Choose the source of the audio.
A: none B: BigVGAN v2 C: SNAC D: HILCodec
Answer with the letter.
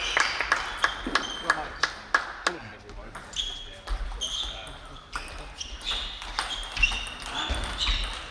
A